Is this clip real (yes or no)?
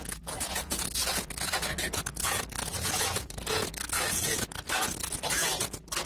no